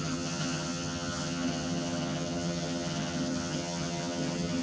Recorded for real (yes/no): no